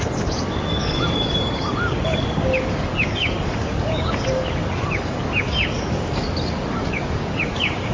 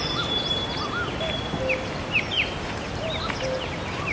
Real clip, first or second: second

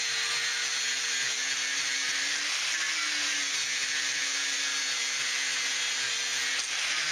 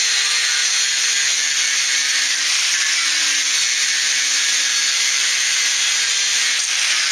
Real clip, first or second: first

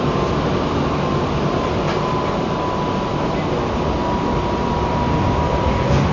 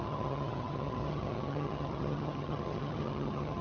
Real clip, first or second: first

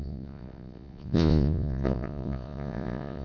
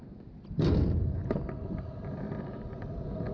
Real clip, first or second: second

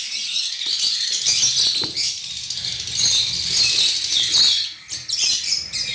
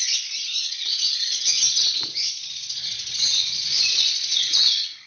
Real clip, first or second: first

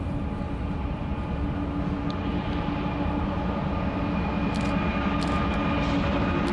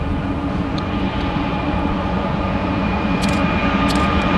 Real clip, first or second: first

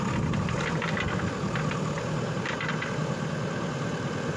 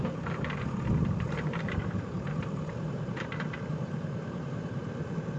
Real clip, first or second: first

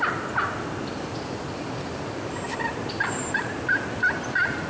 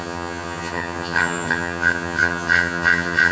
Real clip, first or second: first